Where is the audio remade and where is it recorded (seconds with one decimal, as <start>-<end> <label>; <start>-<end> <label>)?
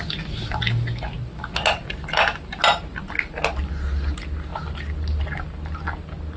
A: 0.0-6.4 recorded